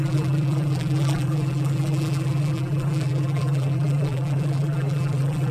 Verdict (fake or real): fake